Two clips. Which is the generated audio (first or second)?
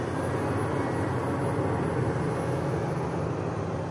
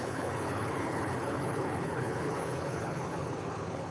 second